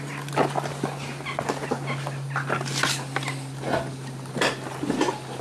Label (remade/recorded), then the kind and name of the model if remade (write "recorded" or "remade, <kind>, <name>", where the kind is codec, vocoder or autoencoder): recorded